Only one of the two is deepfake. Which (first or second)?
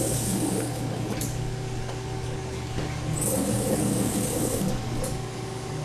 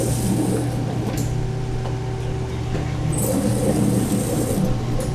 first